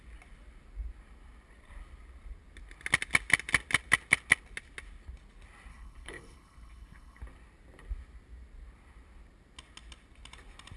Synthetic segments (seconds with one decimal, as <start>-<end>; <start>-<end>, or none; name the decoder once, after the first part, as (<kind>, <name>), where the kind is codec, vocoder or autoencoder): 5.7-7.2 (codec, HILCodec)